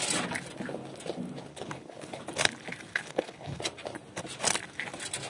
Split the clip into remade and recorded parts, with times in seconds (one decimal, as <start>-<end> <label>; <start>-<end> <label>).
0.0-1.5 recorded; 1.5-2.2 remade; 2.2-2.9 recorded; 2.9-3.6 remade; 3.6-5.3 recorded